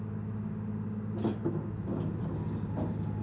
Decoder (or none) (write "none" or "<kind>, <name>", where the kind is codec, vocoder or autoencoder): none